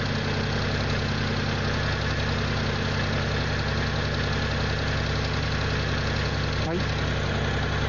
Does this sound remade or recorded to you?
recorded